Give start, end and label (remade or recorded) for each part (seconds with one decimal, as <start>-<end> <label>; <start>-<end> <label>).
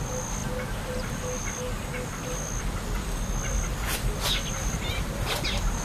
0.0-5.8 recorded